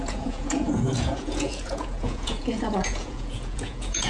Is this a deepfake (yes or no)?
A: yes